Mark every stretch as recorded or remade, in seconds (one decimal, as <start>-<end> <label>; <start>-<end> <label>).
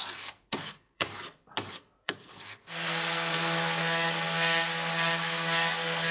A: 0.0-1.1 remade; 1.1-1.7 recorded; 1.7-6.1 remade